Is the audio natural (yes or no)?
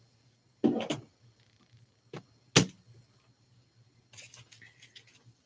yes